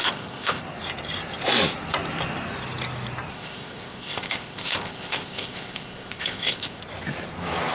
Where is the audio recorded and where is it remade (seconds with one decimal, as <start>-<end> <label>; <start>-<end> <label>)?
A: 0.0-0.6 remade; 0.6-3.3 recorded; 3.3-6.8 remade; 6.8-7.7 recorded